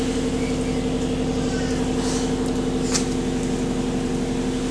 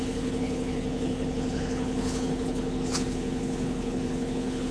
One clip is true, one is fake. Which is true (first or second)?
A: first